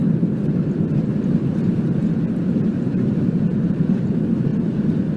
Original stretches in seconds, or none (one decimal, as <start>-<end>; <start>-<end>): 1.1-2.7; 4.5-5.2